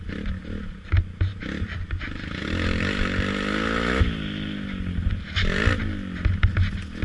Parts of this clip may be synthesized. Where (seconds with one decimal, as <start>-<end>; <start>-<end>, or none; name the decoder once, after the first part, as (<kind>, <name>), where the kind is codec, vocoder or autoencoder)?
none